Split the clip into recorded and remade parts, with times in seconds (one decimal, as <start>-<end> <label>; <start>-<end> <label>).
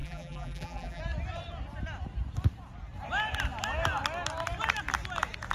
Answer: 0.0-1.0 remade; 1.0-5.5 recorded